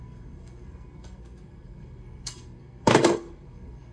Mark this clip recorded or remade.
remade